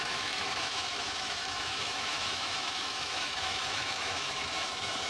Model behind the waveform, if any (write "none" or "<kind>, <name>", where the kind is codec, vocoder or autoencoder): autoencoder, DAC-VAE